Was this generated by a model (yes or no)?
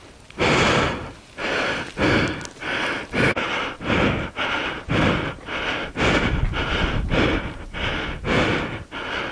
no